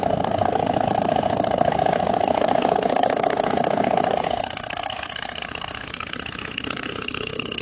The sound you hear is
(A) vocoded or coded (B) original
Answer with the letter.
A